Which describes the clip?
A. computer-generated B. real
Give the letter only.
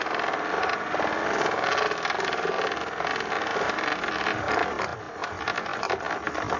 B